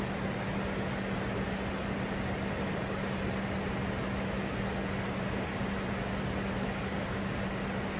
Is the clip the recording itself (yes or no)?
yes